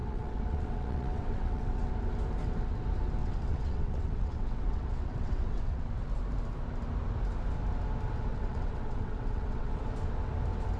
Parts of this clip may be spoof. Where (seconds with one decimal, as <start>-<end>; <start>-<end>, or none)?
0.0-1.9; 3.2-5.9; 8.3-9.8